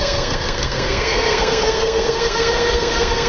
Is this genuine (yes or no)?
no